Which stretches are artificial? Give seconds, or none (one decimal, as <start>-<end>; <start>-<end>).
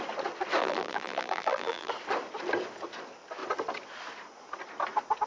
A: 0.6-1.9